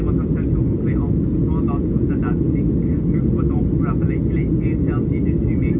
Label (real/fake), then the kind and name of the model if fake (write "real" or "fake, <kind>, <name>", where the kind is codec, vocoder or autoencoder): real